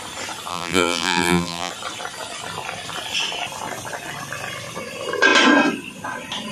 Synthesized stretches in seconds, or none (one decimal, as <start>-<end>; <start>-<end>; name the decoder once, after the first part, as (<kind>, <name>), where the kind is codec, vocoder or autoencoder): 0.5-1.7 (vocoder, BigVGAN v2)